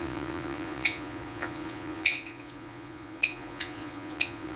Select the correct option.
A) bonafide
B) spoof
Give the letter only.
B